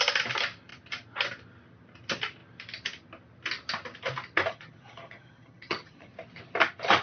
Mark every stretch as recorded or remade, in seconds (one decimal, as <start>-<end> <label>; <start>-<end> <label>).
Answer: 0.0-4.5 recorded; 4.5-6.1 remade; 6.1-7.0 recorded